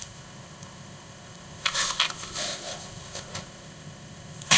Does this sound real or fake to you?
fake